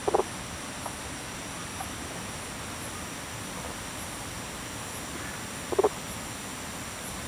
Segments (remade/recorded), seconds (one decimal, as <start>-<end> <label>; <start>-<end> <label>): 0.0-7.3 recorded